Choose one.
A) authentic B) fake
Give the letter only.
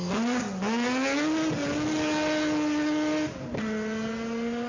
A